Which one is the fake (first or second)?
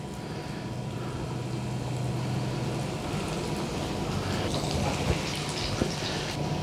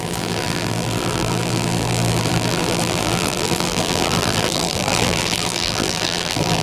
second